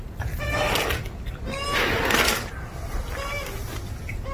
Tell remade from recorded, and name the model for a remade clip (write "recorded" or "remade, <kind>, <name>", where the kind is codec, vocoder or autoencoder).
recorded